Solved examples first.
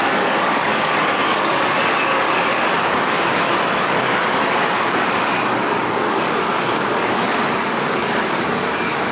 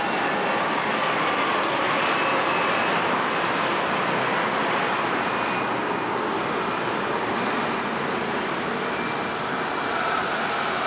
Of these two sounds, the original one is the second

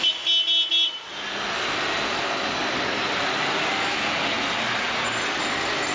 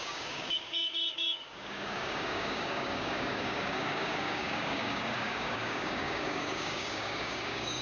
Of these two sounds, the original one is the first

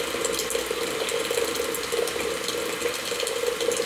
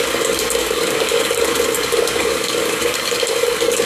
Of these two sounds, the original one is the first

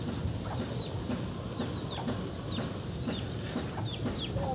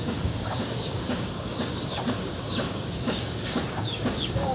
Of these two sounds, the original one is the first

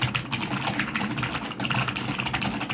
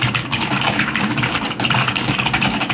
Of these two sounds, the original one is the first